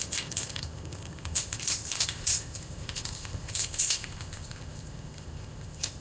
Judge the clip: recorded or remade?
remade